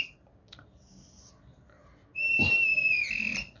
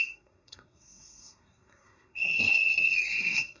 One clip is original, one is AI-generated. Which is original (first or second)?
first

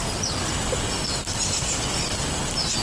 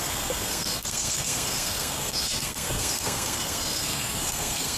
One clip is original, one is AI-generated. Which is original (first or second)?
first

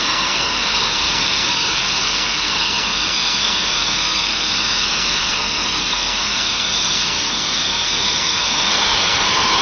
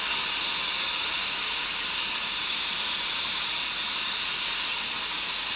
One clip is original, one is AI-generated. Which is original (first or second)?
second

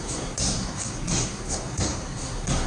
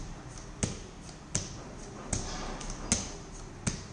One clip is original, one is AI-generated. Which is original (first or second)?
second